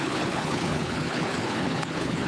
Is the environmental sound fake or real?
fake